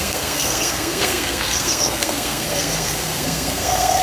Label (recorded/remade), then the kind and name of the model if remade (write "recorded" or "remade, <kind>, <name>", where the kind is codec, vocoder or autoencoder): remade, codec, SNAC